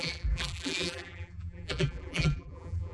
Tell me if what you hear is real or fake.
fake